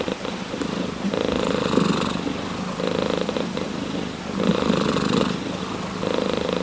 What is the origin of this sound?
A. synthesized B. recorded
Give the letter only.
B